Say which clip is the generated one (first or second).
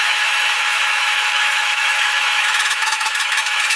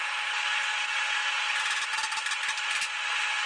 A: first